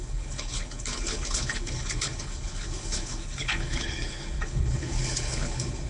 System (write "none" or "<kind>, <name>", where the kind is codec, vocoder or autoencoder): codec, HILCodec